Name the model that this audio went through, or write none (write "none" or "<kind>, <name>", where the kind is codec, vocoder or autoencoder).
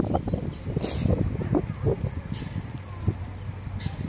none